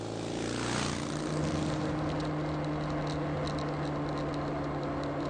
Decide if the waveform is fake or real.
real